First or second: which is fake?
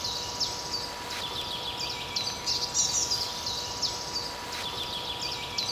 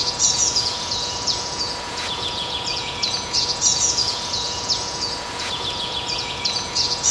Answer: second